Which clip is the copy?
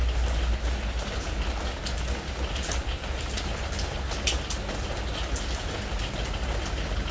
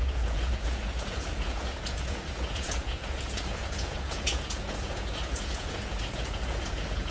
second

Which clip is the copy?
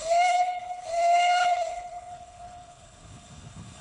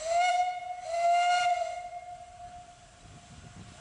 first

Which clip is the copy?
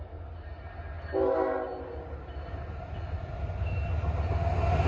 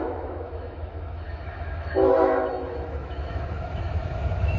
second